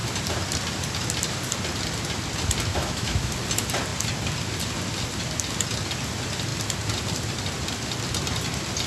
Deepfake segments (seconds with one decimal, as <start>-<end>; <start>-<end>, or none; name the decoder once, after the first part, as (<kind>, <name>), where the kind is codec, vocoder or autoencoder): 2.7-3.3 (autoencoder, DAC-VAE)